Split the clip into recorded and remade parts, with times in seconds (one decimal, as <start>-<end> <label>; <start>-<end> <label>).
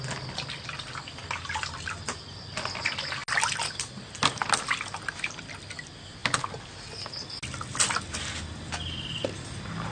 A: 0.0-9.9 recorded